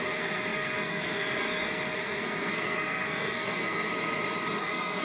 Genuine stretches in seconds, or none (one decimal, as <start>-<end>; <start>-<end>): 3.9-4.6